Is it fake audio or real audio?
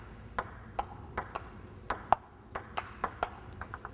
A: real